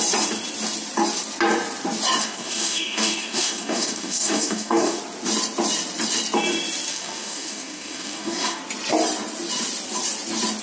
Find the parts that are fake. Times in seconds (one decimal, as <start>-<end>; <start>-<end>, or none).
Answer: 2.2-5.0; 6.9-8.6